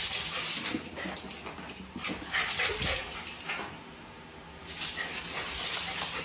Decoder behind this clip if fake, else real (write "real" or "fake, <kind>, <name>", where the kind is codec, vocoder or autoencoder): real